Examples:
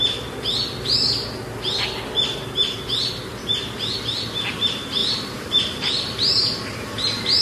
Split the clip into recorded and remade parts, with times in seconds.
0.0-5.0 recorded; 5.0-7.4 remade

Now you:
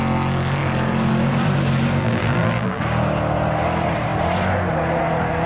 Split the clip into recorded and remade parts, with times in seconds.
0.0-2.0 recorded; 2.0-2.8 remade; 2.8-5.5 recorded

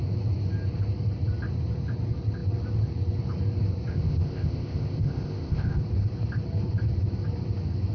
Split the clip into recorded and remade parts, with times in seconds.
0.0-3.9 recorded; 3.9-5.8 remade; 5.8-7.9 recorded

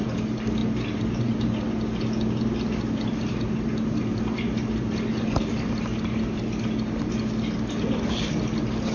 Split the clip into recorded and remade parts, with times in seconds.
0.0-8.9 recorded